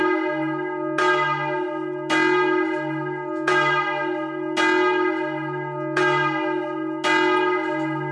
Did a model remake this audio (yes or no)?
no